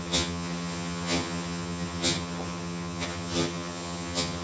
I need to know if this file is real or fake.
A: fake